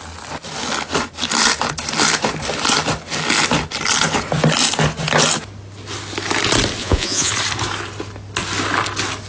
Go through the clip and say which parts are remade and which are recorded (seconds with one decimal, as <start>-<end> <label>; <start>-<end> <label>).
0.0-6.8 recorded; 6.8-7.3 remade; 7.3-9.3 recorded